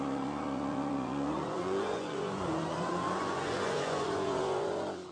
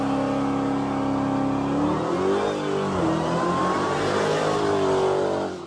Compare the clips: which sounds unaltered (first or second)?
second